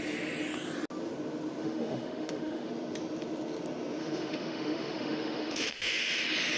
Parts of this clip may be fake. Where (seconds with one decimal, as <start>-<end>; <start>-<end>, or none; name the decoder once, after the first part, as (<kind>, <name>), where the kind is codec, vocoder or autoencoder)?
1.6-2.7 (autoencoder, DAC-VAE); 4.0-6.0

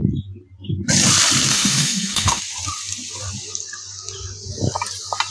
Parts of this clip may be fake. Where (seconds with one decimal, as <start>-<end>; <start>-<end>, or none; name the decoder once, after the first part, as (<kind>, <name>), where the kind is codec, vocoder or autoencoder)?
1.5-2.4 (autoencoder, DAC-VAE)

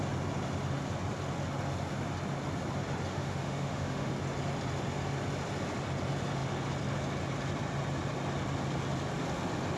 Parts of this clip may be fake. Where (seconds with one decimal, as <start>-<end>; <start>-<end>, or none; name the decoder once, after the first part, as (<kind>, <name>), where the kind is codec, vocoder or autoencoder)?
3.1-4.1 (autoencoder, DAC-VAE)

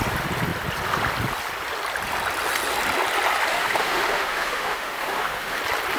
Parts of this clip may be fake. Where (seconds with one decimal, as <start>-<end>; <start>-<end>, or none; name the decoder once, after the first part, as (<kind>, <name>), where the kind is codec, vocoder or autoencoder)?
3.5-5.6 (autoencoder, DAC-VAE)

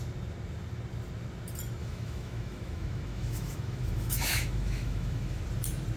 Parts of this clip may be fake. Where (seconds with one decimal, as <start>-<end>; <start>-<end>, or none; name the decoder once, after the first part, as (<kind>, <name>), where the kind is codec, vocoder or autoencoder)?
1.8-5.4 (autoencoder, DAC-VAE)

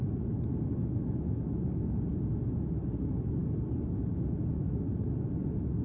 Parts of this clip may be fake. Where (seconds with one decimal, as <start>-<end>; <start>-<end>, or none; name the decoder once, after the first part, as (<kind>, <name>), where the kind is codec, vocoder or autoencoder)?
0.8-1.4 (autoencoder, DAC-VAE)

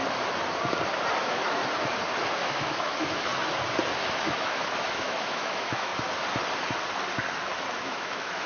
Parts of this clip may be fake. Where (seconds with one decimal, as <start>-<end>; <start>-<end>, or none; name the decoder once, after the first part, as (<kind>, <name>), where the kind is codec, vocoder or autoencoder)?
1.2-1.6 (autoencoder, DAC-VAE); 2.4-3.3; 4.1-5.9; 7.7-8.5

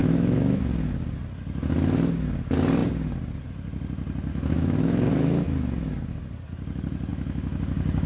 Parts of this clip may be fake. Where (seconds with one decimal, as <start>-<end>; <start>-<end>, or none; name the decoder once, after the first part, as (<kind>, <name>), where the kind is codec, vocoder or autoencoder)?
0.0-0.6 (autoencoder, DAC-VAE); 4.3-5.1; 7.1-7.6